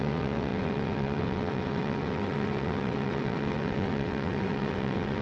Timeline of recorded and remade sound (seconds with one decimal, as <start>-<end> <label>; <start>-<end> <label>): 0.0-5.2 remade